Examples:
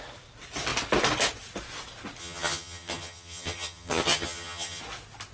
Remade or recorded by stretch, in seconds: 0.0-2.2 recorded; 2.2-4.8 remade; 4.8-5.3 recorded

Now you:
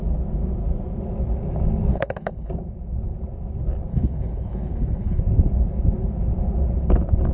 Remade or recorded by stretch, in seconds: 0.0-1.9 recorded; 1.9-2.5 remade; 2.5-3.9 recorded; 3.9-5.2 remade; 5.2-7.3 recorded

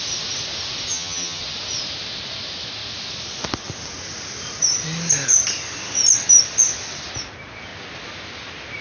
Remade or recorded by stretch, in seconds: 0.0-0.9 recorded; 0.9-1.4 remade; 1.4-8.8 recorded

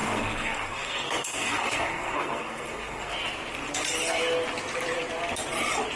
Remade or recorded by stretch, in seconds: 0.0-3.1 remade; 3.1-6.0 recorded

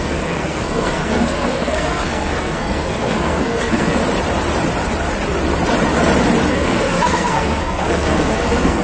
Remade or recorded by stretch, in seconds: 0.0-4.0 remade; 4.0-6.5 recorded; 6.5-8.8 remade